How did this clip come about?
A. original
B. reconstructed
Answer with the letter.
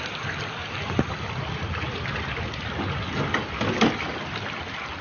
A